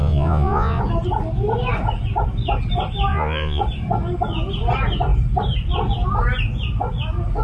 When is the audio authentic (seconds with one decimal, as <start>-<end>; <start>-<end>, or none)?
0.8-3.1; 3.6-7.4